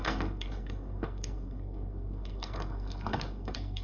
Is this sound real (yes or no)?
no